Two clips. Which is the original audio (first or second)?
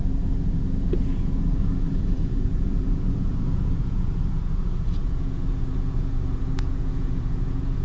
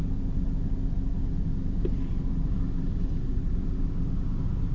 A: second